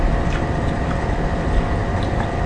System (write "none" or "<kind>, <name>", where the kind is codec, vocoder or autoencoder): vocoder, BigVGAN v2